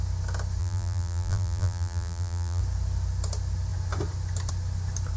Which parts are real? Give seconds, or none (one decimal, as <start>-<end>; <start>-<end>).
0.0-0.6; 2.6-5.2